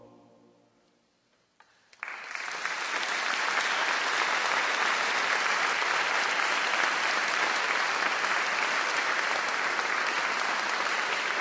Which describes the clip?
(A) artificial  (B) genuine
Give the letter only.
B